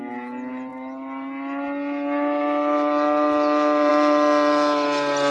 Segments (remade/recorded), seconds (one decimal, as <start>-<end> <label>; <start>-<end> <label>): 0.0-5.3 recorded